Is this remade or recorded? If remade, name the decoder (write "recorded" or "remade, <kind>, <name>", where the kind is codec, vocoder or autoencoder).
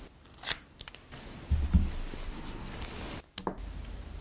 recorded